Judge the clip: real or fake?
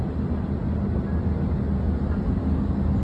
real